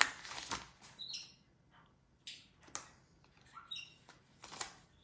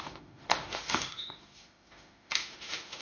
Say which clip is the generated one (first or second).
second